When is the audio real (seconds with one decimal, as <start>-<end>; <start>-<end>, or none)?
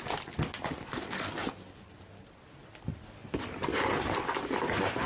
0.0-5.1